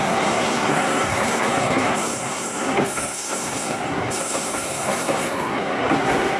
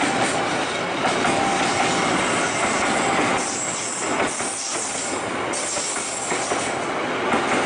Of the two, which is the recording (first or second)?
second